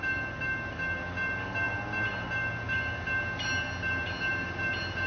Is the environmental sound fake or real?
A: real